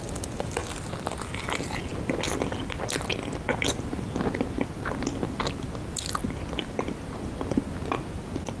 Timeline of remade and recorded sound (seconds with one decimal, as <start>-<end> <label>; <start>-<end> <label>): 0.0-8.6 recorded